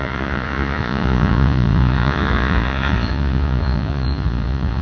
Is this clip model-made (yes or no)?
yes